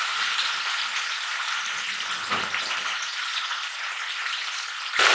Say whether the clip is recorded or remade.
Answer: recorded